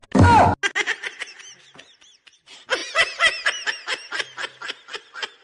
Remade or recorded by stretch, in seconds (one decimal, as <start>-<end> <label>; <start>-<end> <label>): 0.0-5.4 recorded